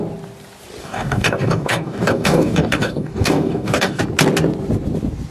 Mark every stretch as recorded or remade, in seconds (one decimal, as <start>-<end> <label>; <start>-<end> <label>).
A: 0.0-0.8 recorded; 0.8-4.0 remade; 4.0-5.3 recorded